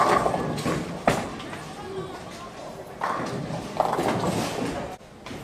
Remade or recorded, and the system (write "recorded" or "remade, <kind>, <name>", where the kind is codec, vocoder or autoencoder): recorded